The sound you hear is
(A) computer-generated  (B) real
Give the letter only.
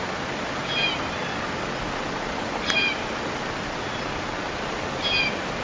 B